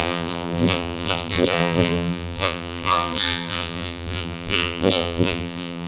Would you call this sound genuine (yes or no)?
no